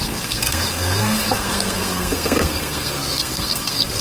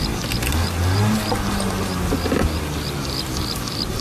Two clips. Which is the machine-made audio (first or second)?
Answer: first